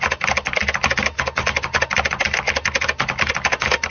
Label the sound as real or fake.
real